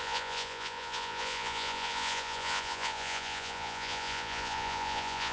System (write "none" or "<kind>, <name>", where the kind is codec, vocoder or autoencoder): vocoder, Vocos